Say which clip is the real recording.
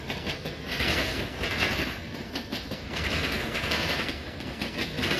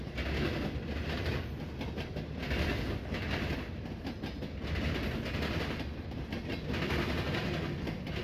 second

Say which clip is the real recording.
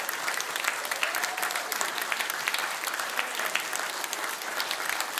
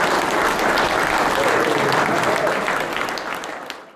second